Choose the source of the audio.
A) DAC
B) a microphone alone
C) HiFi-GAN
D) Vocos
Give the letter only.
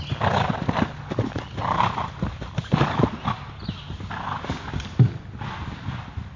B